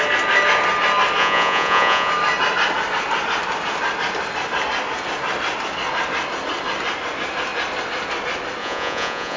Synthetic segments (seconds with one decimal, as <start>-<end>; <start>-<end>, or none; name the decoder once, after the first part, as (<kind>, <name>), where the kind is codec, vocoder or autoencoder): 1.2-2.1 (vocoder, Vocos); 8.6-9.4